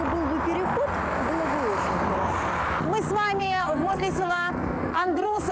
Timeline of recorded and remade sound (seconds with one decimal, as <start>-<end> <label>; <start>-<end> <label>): 0.0-3.4 recorded; 3.4-5.5 remade